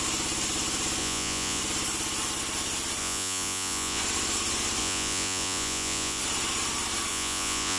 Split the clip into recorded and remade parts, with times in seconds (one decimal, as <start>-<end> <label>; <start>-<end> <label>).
0.0-1.0 recorded; 1.0-1.6 remade; 1.6-3.0 recorded; 3.0-4.0 remade; 4.0-4.8 recorded; 4.8-6.2 remade; 6.2-7.1 recorded; 7.1-7.8 remade